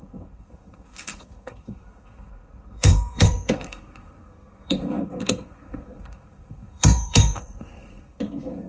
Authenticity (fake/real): fake